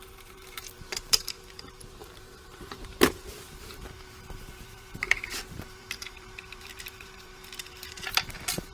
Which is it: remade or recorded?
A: remade